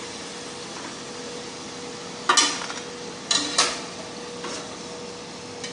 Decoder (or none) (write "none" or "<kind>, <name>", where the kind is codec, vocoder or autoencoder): none